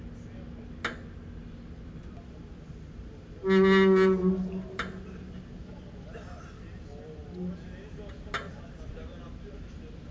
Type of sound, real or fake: real